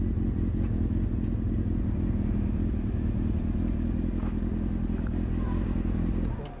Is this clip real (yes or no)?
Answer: yes